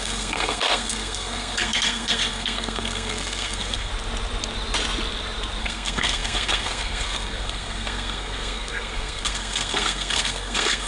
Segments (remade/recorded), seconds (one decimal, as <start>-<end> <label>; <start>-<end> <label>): 0.0-3.9 remade; 3.9-5.6 recorded; 5.6-10.9 remade